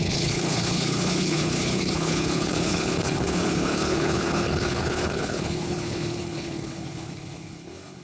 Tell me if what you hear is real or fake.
fake